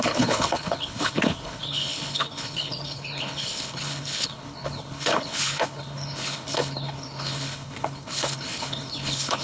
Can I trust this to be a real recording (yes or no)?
no